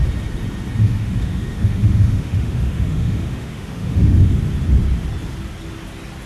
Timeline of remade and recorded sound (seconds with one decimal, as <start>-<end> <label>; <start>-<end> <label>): 0.0-0.8 recorded; 0.8-4.4 remade; 4.4-6.3 recorded